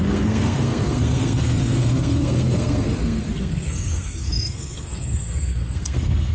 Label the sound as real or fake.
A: fake